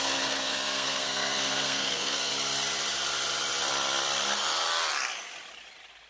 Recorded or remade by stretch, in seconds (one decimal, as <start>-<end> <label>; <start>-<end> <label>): 0.0-2.3 remade; 2.3-6.1 recorded